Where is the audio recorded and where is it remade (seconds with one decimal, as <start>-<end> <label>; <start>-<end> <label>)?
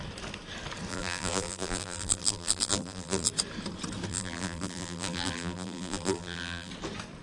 0.0-0.9 recorded; 0.9-3.3 remade; 3.3-4.1 recorded; 4.1-6.7 remade; 6.7-7.2 recorded